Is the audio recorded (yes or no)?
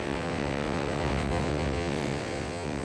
no